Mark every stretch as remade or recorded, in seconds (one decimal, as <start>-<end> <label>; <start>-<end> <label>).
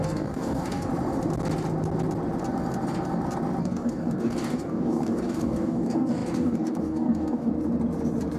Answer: 0.0-0.9 remade; 0.9-3.6 recorded; 3.6-7.5 remade; 7.5-8.4 recorded